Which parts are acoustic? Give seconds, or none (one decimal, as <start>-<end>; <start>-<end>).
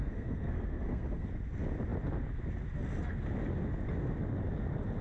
1.3-5.0